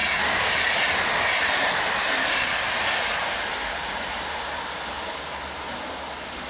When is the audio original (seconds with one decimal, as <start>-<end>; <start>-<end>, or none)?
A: 0.0-4.6; 5.2-6.5